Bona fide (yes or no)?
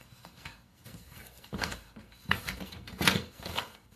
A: no